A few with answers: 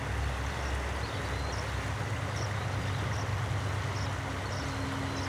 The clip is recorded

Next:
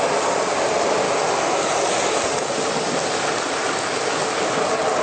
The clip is recorded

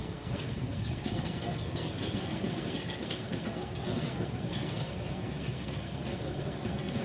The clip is remade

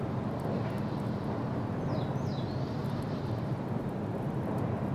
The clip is recorded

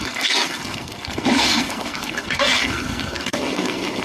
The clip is remade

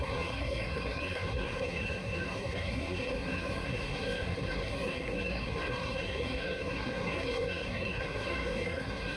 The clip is remade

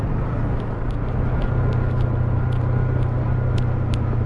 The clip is recorded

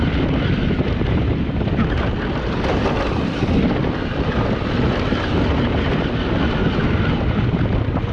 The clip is recorded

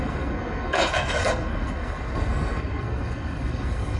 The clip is remade